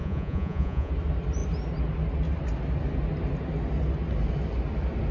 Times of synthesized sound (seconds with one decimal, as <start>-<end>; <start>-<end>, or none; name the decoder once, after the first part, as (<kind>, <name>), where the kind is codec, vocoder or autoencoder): 0.0-0.9 (vocoder, Vocos)